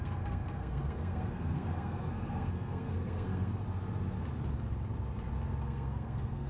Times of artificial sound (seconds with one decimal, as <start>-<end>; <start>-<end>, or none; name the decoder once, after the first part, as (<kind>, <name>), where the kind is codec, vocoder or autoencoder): 0.0-3.6 (codec, SNAC); 5.6-6.5